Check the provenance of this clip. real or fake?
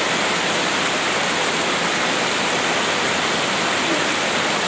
real